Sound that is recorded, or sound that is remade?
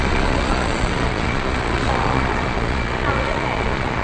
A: remade